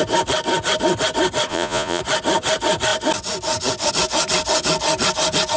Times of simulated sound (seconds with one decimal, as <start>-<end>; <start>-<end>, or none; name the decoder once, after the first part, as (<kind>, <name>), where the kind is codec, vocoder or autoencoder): 1.5-2.0 (vocoder, Vocos)